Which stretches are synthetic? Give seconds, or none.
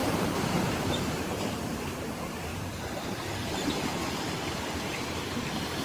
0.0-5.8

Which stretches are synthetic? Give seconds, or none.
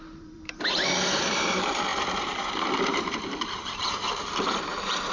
0.0-5.1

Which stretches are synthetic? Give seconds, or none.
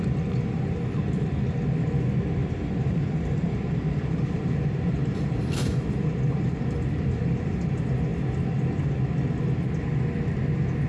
2.4-7.6